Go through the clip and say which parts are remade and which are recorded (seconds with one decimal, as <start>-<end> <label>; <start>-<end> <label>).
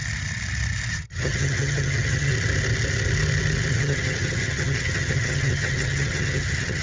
0.0-0.9 recorded; 0.9-2.3 remade; 2.3-3.7 recorded; 3.7-6.8 remade